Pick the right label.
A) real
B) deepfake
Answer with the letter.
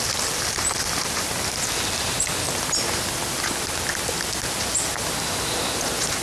A